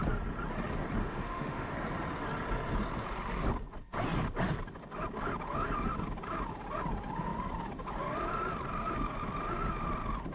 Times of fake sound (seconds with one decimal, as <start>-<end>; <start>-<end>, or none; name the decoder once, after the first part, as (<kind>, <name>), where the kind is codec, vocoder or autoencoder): 1.0-1.7 (autoencoder, DAC-VAE)

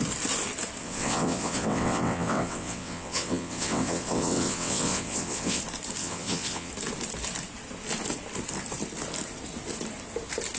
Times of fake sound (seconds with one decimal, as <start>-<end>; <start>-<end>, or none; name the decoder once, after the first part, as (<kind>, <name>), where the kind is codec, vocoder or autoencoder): 0.8-5.6 (vocoder, WaveNeXt); 6.0-6.7